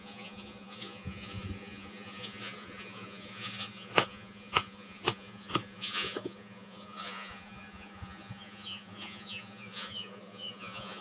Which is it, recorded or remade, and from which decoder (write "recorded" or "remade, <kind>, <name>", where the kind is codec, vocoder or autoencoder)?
remade, vocoder, Vocos